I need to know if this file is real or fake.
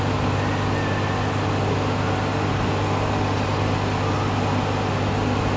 real